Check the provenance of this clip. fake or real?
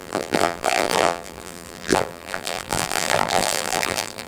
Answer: fake